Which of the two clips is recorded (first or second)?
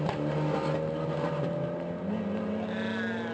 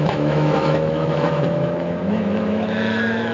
first